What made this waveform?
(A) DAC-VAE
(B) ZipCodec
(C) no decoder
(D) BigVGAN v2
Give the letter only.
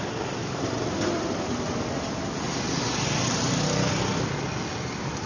C